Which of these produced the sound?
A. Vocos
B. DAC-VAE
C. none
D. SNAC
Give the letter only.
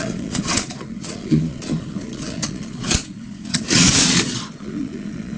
A